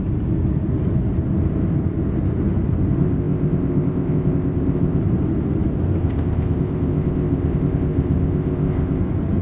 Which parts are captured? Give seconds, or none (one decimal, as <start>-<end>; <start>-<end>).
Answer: 0.0-3.0; 5.0-6.0; 9.0-9.4